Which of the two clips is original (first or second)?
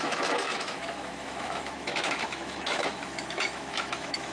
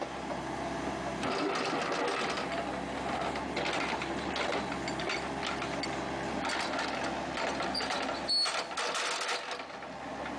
second